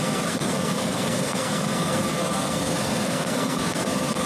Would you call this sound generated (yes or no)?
yes